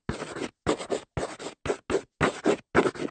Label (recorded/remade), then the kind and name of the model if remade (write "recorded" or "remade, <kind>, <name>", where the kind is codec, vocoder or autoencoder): recorded